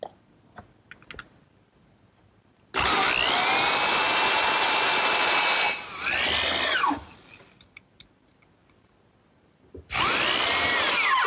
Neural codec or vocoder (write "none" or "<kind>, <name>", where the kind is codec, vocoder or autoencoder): none